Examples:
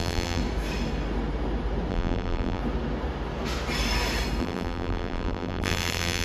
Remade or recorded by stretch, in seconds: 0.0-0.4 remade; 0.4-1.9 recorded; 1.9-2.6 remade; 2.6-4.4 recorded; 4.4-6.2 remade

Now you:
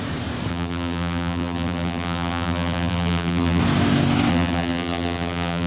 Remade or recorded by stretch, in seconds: 0.0-0.5 recorded; 0.5-3.6 remade; 3.6-4.3 recorded; 4.3-5.7 remade

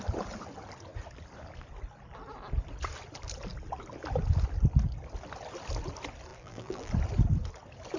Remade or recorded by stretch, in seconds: 0.0-6.3 recorded; 6.3-6.9 remade; 6.9-8.0 recorded

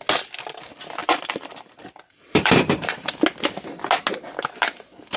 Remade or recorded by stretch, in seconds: 0.0-1.0 recorded; 1.0-3.1 remade; 3.1-5.2 recorded